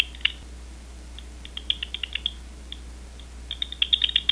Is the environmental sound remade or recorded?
recorded